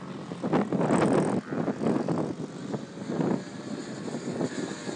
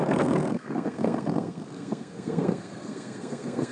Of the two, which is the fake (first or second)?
second